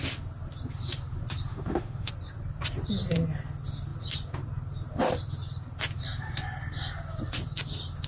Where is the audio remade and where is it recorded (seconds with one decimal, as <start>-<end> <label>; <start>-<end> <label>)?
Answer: 0.0-1.5 recorded; 1.5-2.1 remade; 2.1-8.1 recorded